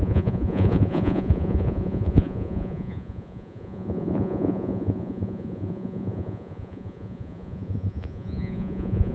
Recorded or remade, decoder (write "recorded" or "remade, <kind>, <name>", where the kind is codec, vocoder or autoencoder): remade, vocoder, Vocos